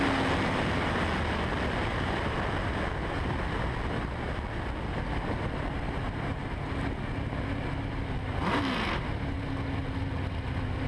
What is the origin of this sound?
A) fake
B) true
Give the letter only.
B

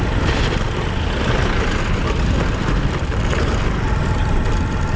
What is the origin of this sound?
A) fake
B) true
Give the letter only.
B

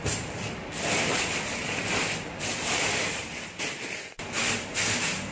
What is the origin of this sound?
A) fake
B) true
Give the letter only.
B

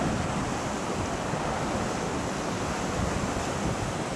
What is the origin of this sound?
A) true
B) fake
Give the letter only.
A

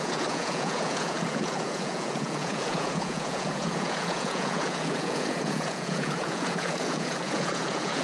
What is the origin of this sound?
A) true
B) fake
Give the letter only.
B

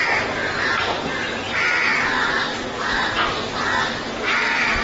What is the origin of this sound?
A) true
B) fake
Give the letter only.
A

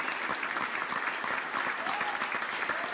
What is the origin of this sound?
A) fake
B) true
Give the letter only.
B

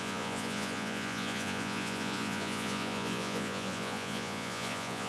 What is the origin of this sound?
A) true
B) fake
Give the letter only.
B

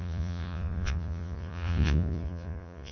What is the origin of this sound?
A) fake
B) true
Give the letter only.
A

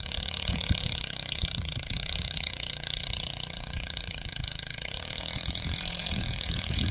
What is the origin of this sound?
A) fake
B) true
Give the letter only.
A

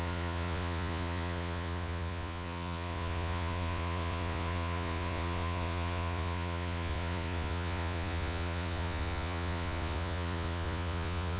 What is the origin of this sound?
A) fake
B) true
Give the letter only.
A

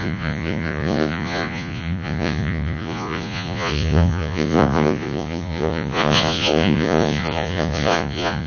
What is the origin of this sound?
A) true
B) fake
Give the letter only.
B